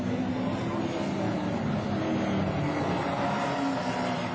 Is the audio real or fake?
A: real